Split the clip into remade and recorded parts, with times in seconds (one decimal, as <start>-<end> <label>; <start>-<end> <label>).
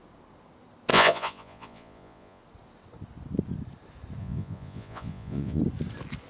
0.0-0.9 recorded; 0.9-2.4 remade; 2.4-4.2 recorded; 4.2-5.6 remade; 5.6-6.3 recorded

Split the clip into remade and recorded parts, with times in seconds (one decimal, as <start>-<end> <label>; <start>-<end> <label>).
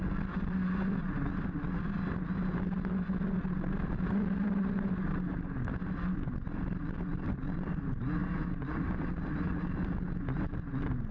0.0-11.1 recorded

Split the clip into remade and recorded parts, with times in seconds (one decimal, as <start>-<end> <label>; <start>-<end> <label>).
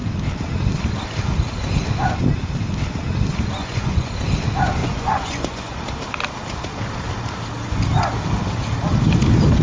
0.0-3.6 recorded; 3.6-4.1 remade; 4.1-4.8 recorded; 4.8-5.8 remade; 5.8-9.6 recorded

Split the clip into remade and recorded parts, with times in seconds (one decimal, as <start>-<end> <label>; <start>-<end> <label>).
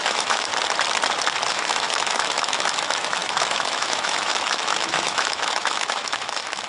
0.0-0.5 remade; 0.5-1.5 recorded; 1.5-6.7 remade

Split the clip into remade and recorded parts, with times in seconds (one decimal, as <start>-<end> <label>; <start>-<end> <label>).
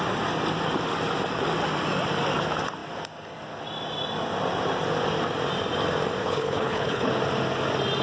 0.0-6.2 recorded; 6.2-7.1 remade; 7.1-8.0 recorded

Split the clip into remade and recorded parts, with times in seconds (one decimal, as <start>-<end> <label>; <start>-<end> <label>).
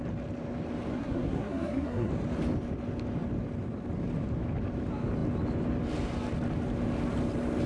0.0-0.9 recorded; 0.9-2.1 remade; 2.1-7.7 recorded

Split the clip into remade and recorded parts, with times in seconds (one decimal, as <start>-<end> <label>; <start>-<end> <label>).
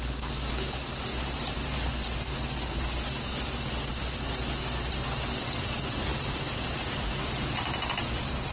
0.0-1.1 recorded; 1.1-1.9 remade; 1.9-6.1 recorded; 6.1-7.9 remade; 7.9-8.5 recorded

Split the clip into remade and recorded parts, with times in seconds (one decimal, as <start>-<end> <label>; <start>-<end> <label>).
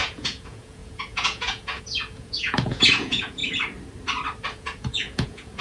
0.0-3.4 remade; 3.4-4.5 recorded; 4.5-5.6 remade